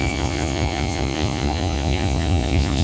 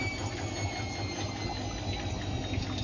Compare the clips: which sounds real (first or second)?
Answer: second